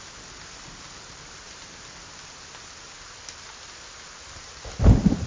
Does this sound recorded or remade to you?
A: recorded